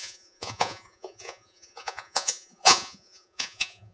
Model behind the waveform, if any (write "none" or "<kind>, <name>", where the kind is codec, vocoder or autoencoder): vocoder, Vocos